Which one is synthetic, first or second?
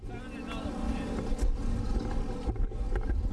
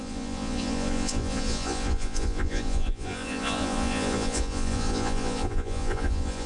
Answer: second